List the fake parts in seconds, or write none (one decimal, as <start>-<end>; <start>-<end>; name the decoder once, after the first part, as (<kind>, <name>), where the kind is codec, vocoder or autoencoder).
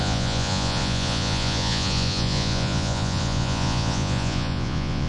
0.0-5.1 (vocoder, Vocos)